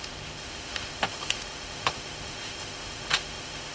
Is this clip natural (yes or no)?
no